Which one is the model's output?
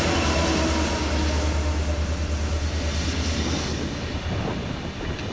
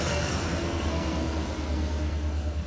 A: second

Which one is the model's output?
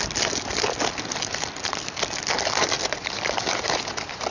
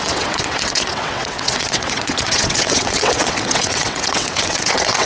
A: second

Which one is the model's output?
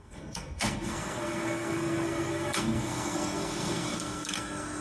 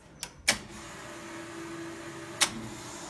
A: first